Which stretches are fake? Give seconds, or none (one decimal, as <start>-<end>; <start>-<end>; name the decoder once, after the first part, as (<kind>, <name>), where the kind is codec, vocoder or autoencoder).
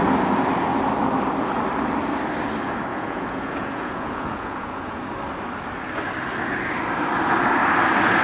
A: 2.9-5.0 (vocoder, Vocos)